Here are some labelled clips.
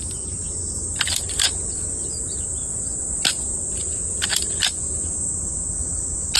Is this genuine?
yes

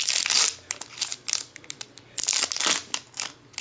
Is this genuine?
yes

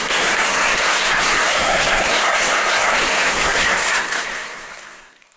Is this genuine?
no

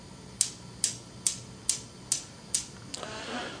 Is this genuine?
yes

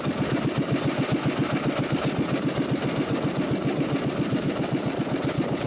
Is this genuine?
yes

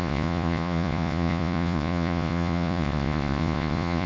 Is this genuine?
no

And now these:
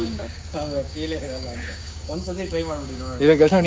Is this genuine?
no